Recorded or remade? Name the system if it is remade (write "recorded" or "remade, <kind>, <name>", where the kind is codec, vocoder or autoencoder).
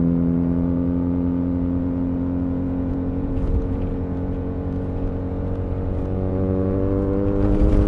remade, vocoder, Vocos